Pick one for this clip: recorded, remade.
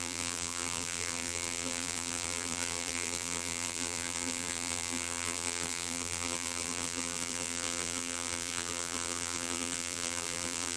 remade